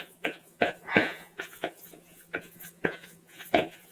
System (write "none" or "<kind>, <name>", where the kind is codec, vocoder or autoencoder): vocoder, Vocos